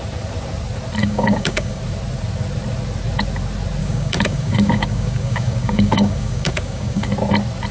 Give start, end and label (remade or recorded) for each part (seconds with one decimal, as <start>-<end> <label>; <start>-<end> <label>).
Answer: 0.0-1.0 recorded; 1.0-1.8 remade; 1.8-3.8 recorded; 3.8-7.1 remade; 7.1-7.7 recorded